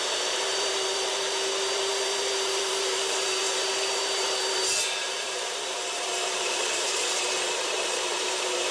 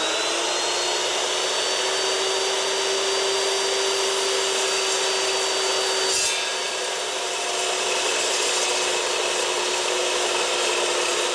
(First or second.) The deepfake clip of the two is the first